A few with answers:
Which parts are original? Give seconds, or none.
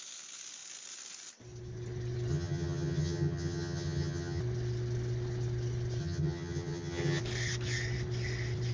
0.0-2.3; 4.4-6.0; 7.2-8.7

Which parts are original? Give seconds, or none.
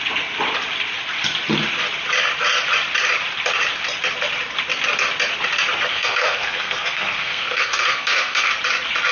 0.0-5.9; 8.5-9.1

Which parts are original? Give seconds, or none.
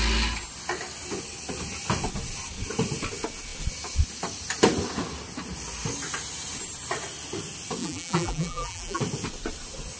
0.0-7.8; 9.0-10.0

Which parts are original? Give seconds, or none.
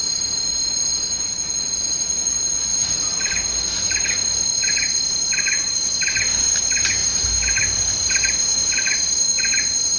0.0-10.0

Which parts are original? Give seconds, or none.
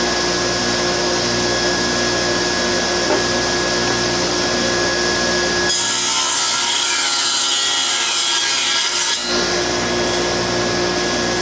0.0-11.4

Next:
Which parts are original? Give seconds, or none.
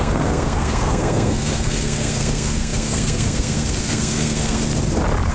4.6-5.3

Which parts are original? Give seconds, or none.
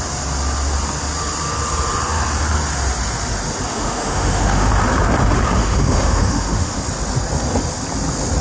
0.0-3.7; 4.7-5.6; 6.8-8.4